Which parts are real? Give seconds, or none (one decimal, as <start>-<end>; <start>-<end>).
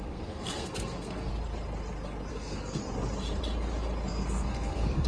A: 1.3-2.3; 2.8-4.1